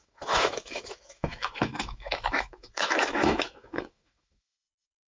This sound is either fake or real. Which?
fake